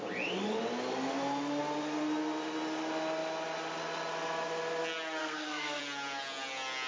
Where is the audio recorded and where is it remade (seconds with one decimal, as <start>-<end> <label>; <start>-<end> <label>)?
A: 0.0-5.2 recorded; 5.2-5.8 remade; 5.8-6.9 recorded